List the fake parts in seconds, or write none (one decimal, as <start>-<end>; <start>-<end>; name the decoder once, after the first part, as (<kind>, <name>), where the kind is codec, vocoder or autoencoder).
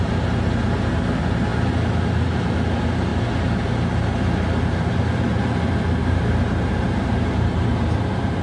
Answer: 6.0-8.4 (vocoder, BigVGAN v2)